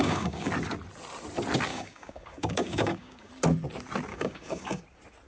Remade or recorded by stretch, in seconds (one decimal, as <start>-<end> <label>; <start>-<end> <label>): 0.0-0.5 remade; 0.5-1.7 recorded; 1.7-3.3 remade; 3.3-4.1 recorded; 4.1-4.8 remade; 4.8-5.3 recorded